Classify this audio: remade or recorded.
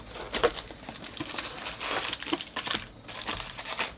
recorded